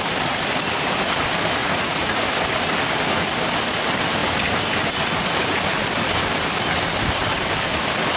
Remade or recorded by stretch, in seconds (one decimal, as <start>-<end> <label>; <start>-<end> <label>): 0.0-1.6 recorded; 1.6-2.2 remade; 2.2-8.2 recorded

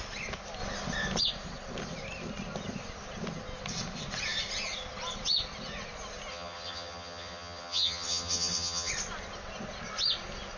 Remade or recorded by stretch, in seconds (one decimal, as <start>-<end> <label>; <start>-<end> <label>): 0.0-6.3 recorded; 6.3-8.9 remade; 8.9-10.6 recorded

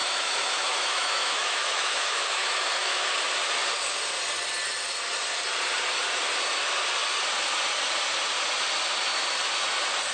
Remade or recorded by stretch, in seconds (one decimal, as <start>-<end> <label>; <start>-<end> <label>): 0.0-3.1 remade; 3.1-10.1 recorded

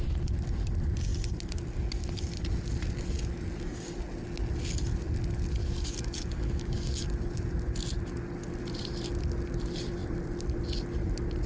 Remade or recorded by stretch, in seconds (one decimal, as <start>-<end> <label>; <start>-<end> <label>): 0.0-5.6 recorded; 5.6-7.1 remade; 7.1-11.5 recorded